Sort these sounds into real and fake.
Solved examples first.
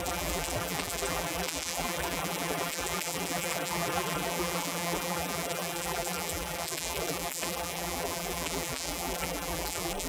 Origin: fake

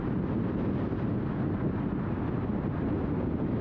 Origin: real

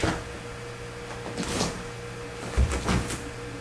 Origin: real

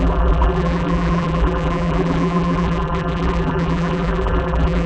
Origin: fake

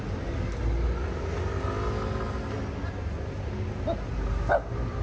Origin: real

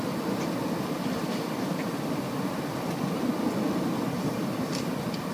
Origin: real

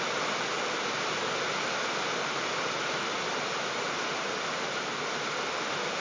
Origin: real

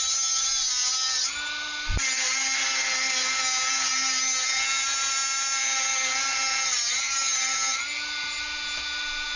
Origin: real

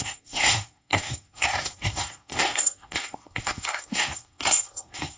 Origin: fake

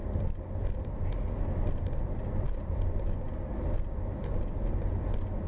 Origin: real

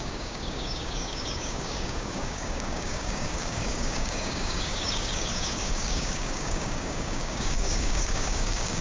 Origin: fake